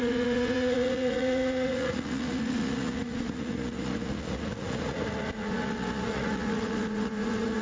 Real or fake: fake